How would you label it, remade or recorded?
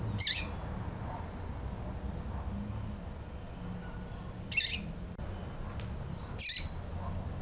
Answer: recorded